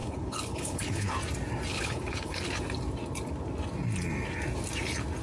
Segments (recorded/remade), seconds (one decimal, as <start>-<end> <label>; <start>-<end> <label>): 0.0-1.1 remade; 1.1-1.7 recorded; 1.7-2.4 remade; 2.4-5.2 recorded

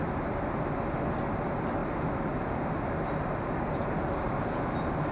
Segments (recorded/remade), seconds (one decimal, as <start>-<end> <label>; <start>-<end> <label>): 0.0-5.1 recorded

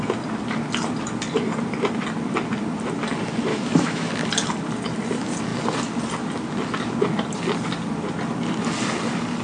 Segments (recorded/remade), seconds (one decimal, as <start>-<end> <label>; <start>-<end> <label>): 0.0-3.5 recorded; 3.5-4.1 remade; 4.1-9.4 recorded

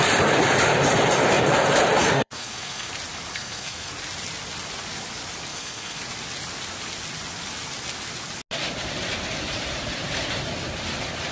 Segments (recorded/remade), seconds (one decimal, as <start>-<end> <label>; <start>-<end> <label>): 0.0-2.0 recorded; 2.0-2.9 remade; 2.9-3.3 recorded; 3.3-3.9 remade; 3.9-5.5 recorded; 5.5-6.0 remade; 6.0-11.3 recorded

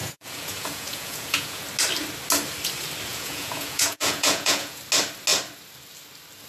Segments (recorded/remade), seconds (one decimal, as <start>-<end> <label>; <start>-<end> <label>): 0.0-1.6 remade; 1.6-3.1 recorded; 3.1-4.8 remade; 4.8-6.5 recorded

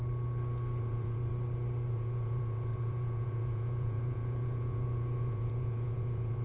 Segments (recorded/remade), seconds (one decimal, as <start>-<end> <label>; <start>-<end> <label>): 0.0-0.8 recorded; 0.8-1.3 remade; 1.3-1.9 recorded; 1.9-6.4 remade

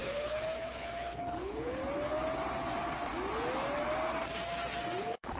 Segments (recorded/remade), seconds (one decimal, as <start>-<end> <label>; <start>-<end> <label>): 0.0-1.8 remade; 1.8-5.0 recorded; 5.0-5.4 remade